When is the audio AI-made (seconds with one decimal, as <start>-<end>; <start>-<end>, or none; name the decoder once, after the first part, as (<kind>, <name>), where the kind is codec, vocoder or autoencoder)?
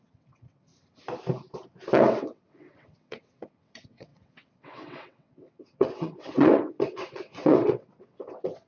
0.0-0.7 (vocoder, WaveNeXt); 1.9-8.7